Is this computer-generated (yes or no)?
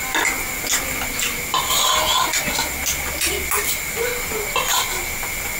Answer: no